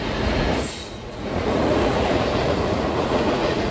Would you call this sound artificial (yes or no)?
yes